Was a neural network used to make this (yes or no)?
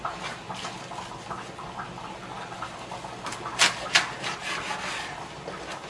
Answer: no